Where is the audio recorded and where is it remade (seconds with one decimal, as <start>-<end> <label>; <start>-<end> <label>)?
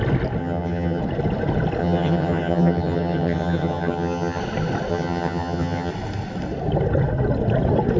0.0-0.4 recorded; 0.4-1.0 remade; 1.0-1.8 recorded; 1.8-4.4 remade; 4.4-4.9 recorded; 4.9-5.9 remade; 5.9-8.0 recorded